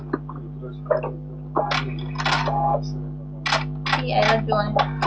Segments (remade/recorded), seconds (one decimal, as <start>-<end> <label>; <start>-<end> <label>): 0.0-5.1 recorded

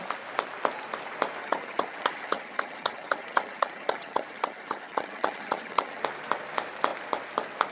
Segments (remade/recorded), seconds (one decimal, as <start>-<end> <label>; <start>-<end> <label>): 0.0-1.4 recorded; 1.4-6.0 remade; 6.0-7.7 recorded

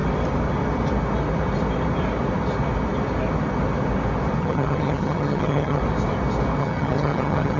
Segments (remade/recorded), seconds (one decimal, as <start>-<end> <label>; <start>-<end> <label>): 0.0-4.4 recorded; 4.4-5.8 remade; 5.8-6.6 recorded; 6.6-7.6 remade

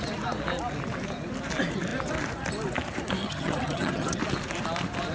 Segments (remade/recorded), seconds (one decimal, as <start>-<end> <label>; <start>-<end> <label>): 0.0-3.2 recorded; 3.2-4.2 remade; 4.2-5.1 recorded

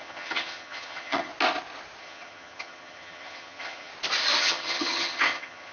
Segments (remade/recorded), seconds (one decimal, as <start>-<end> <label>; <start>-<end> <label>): 0.0-1.3 remade; 1.3-2.0 recorded; 2.0-3.9 remade; 3.9-4.4 recorded; 4.4-5.7 remade